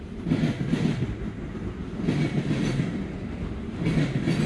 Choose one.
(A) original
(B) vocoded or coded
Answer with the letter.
A